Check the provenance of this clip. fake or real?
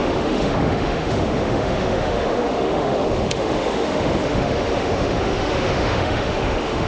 fake